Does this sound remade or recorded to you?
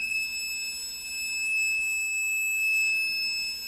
recorded